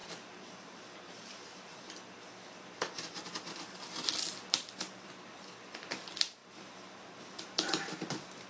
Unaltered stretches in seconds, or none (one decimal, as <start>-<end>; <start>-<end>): 1.8-6.4